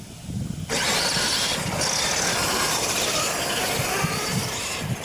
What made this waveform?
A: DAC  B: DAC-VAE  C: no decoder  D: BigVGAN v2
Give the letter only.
C